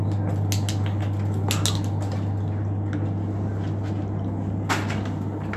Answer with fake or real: real